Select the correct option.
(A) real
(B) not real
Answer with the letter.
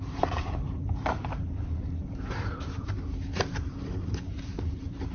B